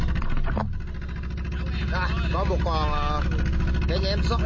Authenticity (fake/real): real